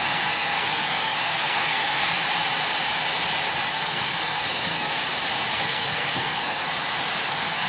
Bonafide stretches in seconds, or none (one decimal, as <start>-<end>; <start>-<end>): 2.1-3.7; 5.0-5.5; 6.6-7.3